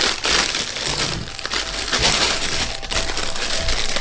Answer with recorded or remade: recorded